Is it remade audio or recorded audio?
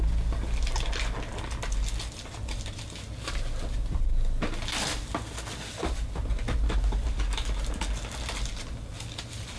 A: recorded